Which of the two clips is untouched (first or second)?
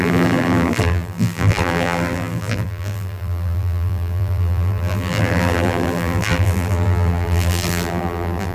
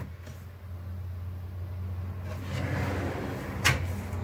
second